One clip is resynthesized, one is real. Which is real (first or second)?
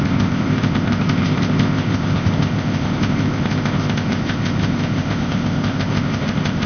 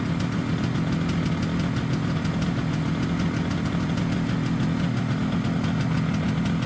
second